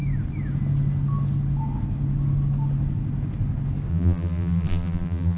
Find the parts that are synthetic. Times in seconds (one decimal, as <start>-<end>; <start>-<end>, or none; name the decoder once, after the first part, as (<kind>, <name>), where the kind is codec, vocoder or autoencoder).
3.9-5.4 (vocoder, BigVGAN v2)